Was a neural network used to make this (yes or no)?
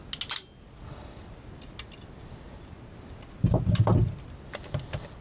no